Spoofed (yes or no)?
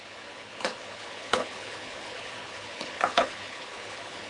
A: yes